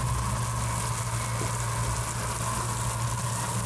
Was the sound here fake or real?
real